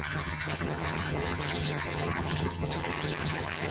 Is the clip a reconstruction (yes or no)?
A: yes